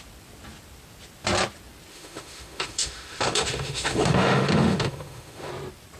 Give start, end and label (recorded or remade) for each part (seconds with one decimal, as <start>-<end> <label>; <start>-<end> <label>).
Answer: 0.0-1.9 recorded; 1.9-5.5 remade; 5.5-6.0 recorded

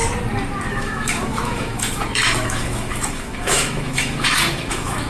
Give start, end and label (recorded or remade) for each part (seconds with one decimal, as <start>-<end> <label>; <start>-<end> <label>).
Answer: 0.0-0.7 recorded; 0.7-5.1 remade

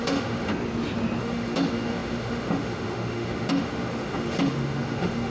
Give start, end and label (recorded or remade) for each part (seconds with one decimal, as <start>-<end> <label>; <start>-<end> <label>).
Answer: 0.0-0.5 remade; 0.5-1.2 recorded; 1.2-5.3 remade

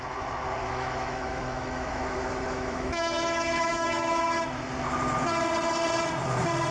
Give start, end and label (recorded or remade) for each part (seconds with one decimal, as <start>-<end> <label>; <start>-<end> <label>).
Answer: 0.0-0.6 recorded; 0.6-4.2 remade; 4.2-6.7 recorded

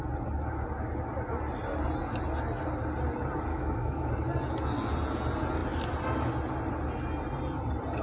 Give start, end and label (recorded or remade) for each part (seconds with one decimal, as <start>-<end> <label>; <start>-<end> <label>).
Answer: 0.0-3.5 recorded; 3.5-4.1 remade; 4.1-8.0 recorded